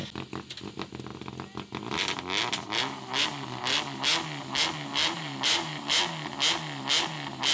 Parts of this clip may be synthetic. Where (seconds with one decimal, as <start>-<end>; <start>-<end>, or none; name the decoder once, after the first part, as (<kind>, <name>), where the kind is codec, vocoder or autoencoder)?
4.9-6.0 (vocoder, BigVGAN v2)